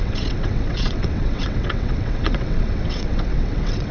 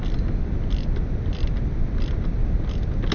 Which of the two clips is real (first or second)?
second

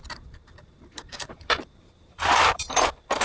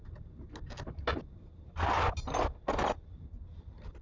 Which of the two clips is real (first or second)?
second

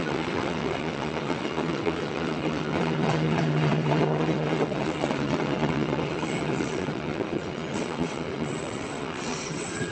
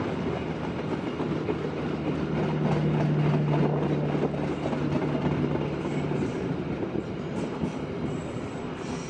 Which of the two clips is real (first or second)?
second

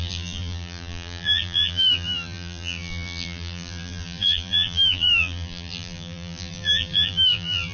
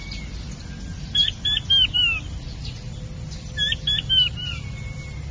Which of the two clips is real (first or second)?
second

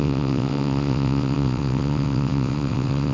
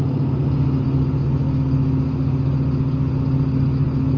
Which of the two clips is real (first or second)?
second